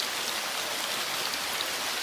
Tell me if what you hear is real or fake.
real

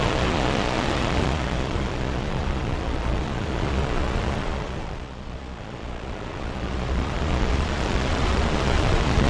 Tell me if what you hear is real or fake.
fake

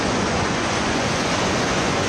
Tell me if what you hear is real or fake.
fake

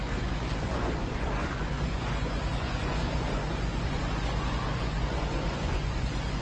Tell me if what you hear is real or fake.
fake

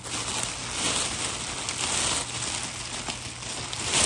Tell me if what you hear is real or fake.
real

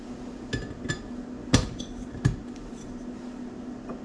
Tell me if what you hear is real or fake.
real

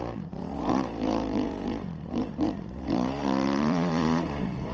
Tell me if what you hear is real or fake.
fake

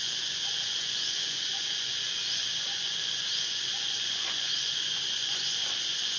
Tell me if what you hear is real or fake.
fake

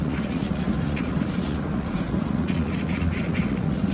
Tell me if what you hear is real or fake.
fake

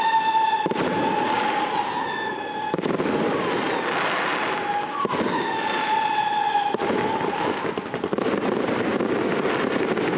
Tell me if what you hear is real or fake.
real